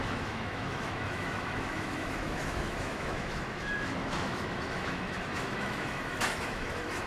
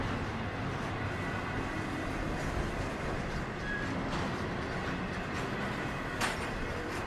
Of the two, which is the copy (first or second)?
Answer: first